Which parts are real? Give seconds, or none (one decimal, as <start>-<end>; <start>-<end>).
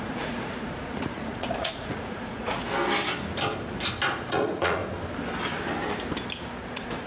2.6-4.3; 4.8-6.6